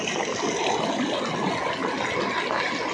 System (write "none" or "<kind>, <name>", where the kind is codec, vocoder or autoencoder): none